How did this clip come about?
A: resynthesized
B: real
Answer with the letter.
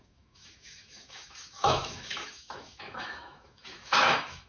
A